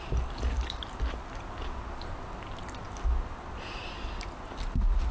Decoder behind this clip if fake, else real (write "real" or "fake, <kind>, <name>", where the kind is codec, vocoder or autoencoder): real